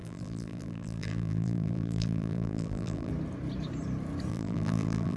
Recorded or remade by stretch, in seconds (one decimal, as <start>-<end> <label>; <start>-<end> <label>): 0.0-3.1 remade; 3.1-4.3 recorded; 4.3-5.2 remade